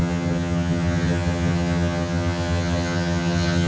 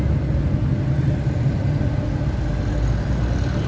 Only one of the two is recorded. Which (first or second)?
second